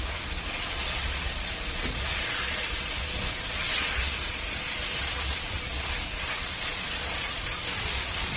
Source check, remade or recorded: remade